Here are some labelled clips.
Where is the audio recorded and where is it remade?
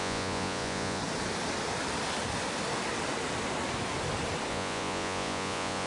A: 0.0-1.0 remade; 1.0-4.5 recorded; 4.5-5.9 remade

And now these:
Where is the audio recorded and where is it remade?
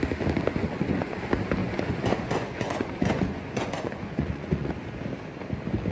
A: 0.0-0.6 recorded; 0.6-1.2 remade; 1.2-1.6 recorded; 1.6-4.7 remade; 4.7-5.9 recorded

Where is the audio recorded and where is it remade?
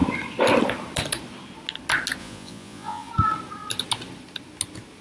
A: 0.0-2.2 recorded; 2.2-3.1 remade; 3.1-5.0 recorded